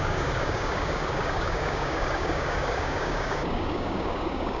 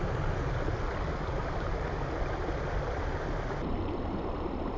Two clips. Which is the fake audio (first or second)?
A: first